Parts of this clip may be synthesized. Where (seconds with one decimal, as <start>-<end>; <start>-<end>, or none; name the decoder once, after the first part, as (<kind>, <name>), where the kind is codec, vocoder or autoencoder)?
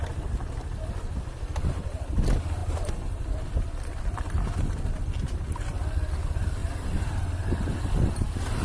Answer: none